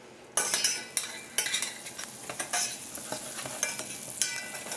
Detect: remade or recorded recorded